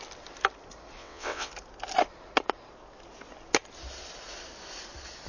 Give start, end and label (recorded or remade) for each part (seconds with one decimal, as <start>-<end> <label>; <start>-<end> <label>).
0.0-1.0 recorded; 1.0-1.5 remade; 1.5-5.3 recorded